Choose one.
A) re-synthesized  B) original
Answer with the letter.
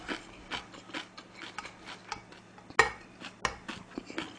B